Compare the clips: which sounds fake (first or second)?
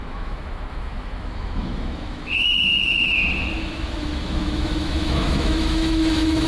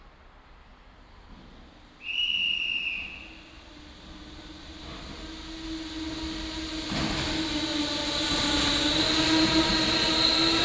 first